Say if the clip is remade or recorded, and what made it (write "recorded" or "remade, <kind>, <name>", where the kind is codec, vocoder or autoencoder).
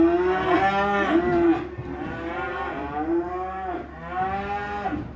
recorded